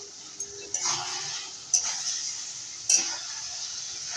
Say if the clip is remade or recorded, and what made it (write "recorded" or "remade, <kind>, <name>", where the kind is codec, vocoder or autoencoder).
recorded